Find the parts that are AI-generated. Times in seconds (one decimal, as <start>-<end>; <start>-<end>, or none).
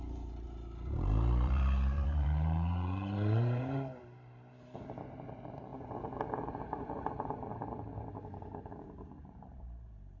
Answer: 0.0-10.2